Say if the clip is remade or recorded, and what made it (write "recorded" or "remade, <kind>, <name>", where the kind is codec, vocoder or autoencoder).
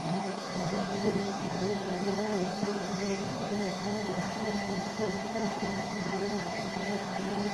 remade, codec, SNAC